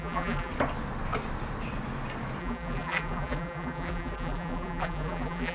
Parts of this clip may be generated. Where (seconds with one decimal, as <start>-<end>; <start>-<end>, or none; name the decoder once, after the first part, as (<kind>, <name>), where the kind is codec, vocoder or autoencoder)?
0.0-0.5 (vocoder, BigVGAN v2); 2.4-5.5